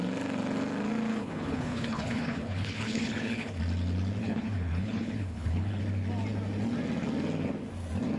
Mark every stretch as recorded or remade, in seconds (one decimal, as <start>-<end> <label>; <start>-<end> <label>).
0.0-1.1 recorded; 1.1-3.6 remade; 3.6-4.2 recorded; 4.2-5.8 remade; 5.8-8.2 recorded

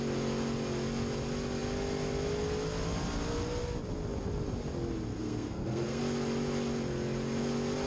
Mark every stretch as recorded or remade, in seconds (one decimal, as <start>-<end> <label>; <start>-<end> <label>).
0.0-5.1 recorded; 5.1-6.0 remade; 6.0-7.9 recorded

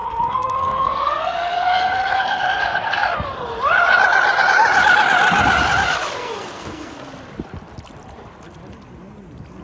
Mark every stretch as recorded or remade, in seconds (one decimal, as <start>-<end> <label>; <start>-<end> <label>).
0.0-3.1 remade; 3.1-6.2 recorded; 6.2-7.0 remade; 7.0-9.6 recorded

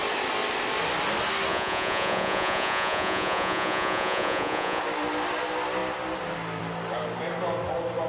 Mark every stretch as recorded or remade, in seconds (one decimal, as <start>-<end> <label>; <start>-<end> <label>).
0.0-1.5 recorded; 1.5-4.8 remade; 4.8-8.1 recorded

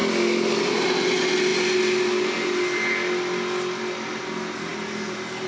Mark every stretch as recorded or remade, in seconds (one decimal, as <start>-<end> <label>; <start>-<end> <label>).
0.0-5.5 recorded

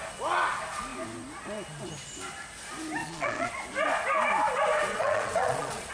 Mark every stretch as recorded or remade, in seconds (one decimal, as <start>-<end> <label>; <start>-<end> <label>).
0.0-3.0 recorded; 3.0-3.5 remade; 3.5-4.9 recorded; 4.9-5.9 remade

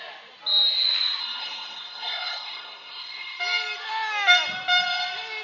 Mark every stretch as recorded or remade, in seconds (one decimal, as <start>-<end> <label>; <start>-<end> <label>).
0.0-1.2 recorded; 1.2-3.4 remade; 3.4-5.4 recorded

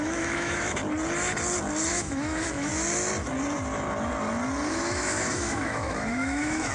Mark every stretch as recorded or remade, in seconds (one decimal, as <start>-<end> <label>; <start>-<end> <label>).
0.0-0.8 remade; 0.8-1.9 recorded; 1.9-2.7 remade; 2.7-4.7 recorded; 4.7-6.7 remade